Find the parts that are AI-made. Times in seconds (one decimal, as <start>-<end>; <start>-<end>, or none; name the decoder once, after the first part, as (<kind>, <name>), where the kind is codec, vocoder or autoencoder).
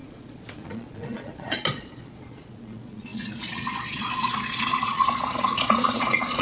0.0-6.4 (vocoder, Vocos)